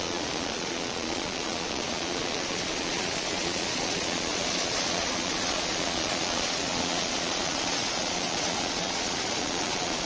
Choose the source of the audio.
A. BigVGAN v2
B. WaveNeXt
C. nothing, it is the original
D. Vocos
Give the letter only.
D